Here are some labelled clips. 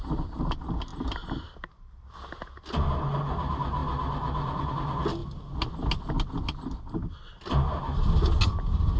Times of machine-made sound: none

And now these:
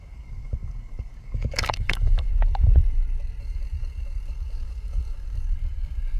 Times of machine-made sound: 0.0-2.3 (codec, DAC); 3.4-6.2

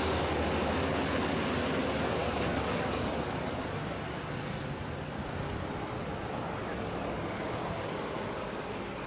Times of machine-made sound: 2.2-3.5 (codec, DAC); 6.7-8.2

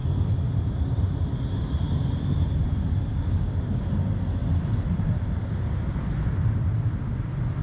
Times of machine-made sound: 3.1-3.8 (codec, DAC)

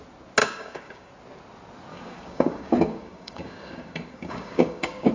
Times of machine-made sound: 0.4-1.1 (codec, DAC); 1.9-5.1